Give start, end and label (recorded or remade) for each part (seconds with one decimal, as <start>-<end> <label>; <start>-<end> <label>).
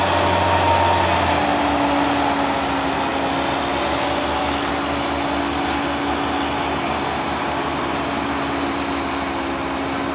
0.0-10.1 recorded